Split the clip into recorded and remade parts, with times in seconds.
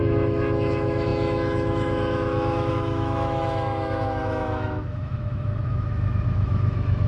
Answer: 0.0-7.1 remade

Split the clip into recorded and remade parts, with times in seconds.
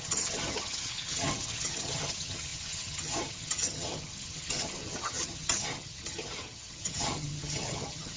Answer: 0.0-8.2 remade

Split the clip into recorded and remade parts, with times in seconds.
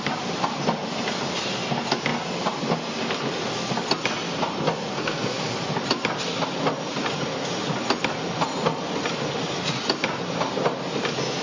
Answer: 0.0-4.9 recorded; 4.9-5.5 remade; 5.5-11.4 recorded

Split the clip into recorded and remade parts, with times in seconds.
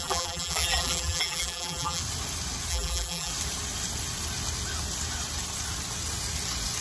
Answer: 0.0-2.0 remade; 2.0-2.7 recorded; 2.7-3.3 remade; 3.3-6.8 recorded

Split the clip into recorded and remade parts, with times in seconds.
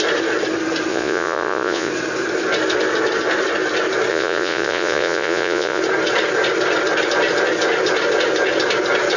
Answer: 0.0-0.9 recorded; 0.9-1.9 remade; 1.9-4.1 recorded; 4.1-5.8 remade; 5.8-9.2 recorded